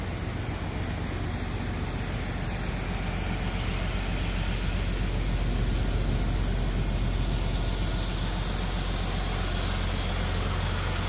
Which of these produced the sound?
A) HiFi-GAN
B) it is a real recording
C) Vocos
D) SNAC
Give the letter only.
B